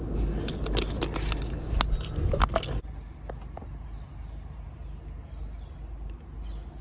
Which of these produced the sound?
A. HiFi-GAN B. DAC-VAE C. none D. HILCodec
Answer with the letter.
C